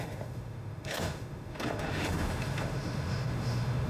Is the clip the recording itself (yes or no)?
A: no